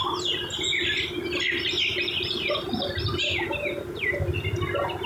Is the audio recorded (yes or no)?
yes